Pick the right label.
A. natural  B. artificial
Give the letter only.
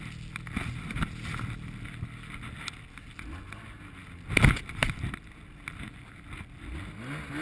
A